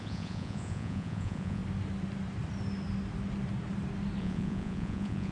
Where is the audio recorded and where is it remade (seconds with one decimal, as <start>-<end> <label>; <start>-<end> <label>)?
0.0-1.6 remade; 1.6-4.2 recorded; 4.2-5.3 remade